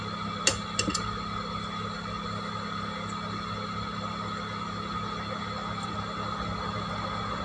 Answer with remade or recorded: recorded